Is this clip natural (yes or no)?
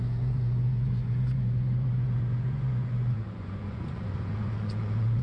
no